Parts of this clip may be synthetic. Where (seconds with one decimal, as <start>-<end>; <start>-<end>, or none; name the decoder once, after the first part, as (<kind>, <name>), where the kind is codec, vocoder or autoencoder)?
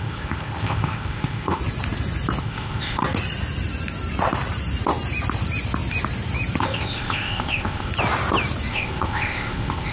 0.0-1.6 (codec, ZipCodec); 2.4-3.0; 6.6-7.9; 8.7-9.9